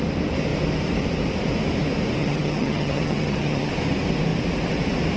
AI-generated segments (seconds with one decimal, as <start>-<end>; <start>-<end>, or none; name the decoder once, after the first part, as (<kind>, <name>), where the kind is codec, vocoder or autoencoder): 2.2-3.7 (vocoder, HiFi-GAN)

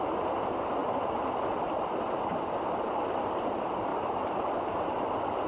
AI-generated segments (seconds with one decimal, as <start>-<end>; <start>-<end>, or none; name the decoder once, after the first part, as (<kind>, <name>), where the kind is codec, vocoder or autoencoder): none

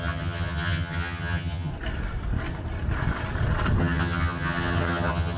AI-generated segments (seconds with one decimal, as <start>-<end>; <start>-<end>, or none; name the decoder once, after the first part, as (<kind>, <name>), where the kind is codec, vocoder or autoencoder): 0.0-1.7 (vocoder, HiFi-GAN); 3.8-5.4

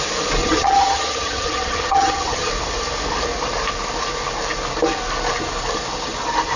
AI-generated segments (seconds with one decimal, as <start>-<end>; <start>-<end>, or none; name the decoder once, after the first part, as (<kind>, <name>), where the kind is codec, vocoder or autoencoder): 0.4-2.5 (vocoder, HiFi-GAN)

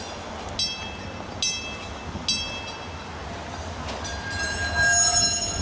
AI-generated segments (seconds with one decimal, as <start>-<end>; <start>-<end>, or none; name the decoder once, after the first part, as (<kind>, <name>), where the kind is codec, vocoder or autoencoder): none